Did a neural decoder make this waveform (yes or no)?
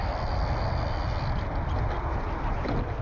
no